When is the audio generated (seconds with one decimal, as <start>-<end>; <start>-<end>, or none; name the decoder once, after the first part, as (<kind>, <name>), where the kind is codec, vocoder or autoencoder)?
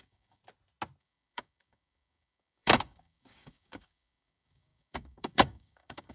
0.0-0.4 (codec, DAC); 1.0-6.1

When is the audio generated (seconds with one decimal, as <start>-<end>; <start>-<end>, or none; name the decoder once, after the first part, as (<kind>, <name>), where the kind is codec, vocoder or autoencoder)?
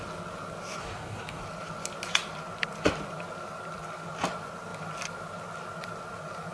0.8-1.4 (codec, DAC)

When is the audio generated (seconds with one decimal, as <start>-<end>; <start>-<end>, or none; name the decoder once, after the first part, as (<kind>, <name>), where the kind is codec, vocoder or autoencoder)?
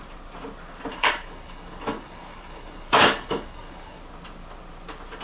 0.9-4.0 (codec, DAC)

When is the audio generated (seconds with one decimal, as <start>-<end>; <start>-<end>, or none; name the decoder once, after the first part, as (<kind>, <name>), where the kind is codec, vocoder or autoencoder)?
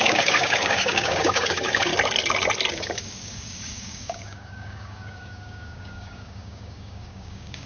0.0-1.9 (codec, DAC); 2.7-7.7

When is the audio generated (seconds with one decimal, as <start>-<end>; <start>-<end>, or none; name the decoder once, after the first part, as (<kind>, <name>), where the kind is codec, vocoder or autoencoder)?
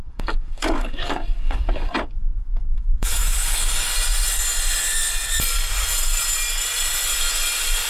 0.0-3.9 (codec, DAC)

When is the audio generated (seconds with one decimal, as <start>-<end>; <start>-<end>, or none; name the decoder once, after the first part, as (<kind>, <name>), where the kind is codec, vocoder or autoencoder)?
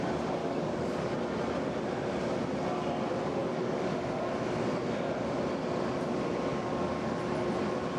0.4-1.1 (codec, DAC); 3.4-4.3; 6.5-7.2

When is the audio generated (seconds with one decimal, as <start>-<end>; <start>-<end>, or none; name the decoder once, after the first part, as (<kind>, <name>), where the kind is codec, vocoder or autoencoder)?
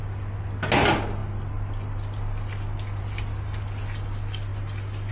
none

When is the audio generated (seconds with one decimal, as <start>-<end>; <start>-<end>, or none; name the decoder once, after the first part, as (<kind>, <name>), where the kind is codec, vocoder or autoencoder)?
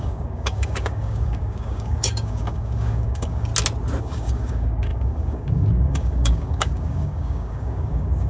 0.0-3.5 (codec, DAC); 4.0-8.3